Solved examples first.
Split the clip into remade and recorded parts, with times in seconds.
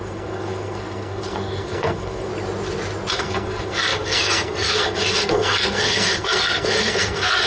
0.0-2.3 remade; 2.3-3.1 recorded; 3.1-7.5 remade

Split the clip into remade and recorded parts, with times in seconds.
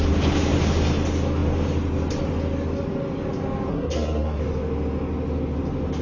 0.0-3.7 recorded; 3.7-4.4 remade; 4.4-6.0 recorded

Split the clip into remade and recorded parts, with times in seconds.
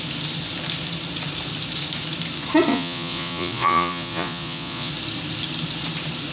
0.0-2.7 recorded; 2.7-4.9 remade; 4.9-6.3 recorded